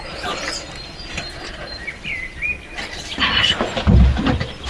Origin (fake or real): real